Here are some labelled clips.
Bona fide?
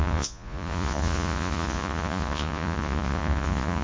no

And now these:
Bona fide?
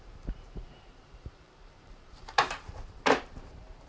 no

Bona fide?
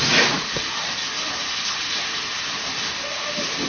yes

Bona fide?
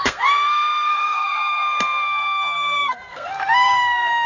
no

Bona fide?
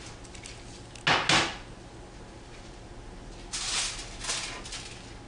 yes